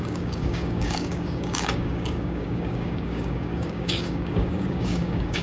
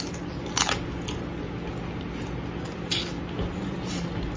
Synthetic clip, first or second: first